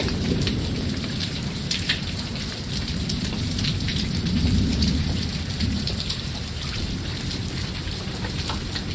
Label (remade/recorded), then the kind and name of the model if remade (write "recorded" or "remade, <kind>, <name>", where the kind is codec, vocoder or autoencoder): remade, vocoder, BigVGAN v2